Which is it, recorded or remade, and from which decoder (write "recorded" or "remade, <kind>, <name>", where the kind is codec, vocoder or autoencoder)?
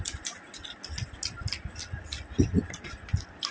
recorded